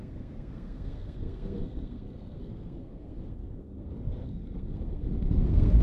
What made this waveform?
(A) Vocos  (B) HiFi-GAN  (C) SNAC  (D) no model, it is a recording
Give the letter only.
C